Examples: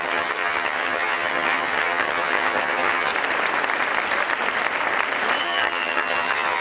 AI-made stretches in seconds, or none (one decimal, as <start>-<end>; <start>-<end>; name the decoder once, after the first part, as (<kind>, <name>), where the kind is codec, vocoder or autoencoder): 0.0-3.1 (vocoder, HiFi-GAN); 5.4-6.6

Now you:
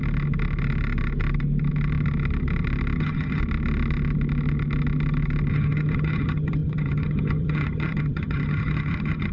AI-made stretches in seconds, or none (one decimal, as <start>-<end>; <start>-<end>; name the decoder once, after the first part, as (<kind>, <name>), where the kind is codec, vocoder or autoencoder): 3.0-3.4 (vocoder, HiFi-GAN); 5.5-9.3

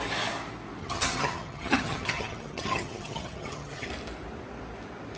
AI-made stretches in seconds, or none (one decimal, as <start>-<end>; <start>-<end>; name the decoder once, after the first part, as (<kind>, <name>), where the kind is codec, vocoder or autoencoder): 0.8-3.9 (vocoder, HiFi-GAN)

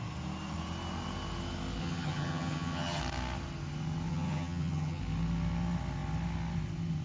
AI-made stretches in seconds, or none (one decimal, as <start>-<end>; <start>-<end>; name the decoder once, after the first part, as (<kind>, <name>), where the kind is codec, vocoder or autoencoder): 1.8-3.0 (vocoder, HiFi-GAN); 4.1-5.0

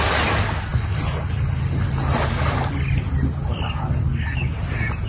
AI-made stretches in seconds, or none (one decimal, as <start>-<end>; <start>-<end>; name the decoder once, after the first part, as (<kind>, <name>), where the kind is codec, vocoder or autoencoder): none

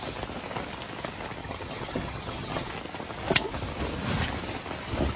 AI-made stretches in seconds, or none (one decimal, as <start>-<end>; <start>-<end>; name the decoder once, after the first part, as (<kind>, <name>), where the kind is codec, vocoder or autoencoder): 1.4-2.7 (vocoder, HiFi-GAN)